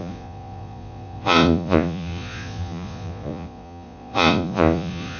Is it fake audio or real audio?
fake